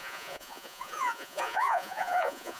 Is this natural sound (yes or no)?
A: no